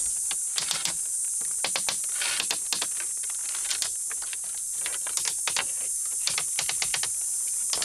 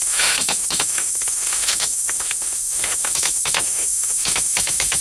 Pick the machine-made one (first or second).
second